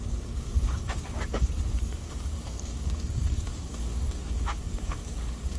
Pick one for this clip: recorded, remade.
remade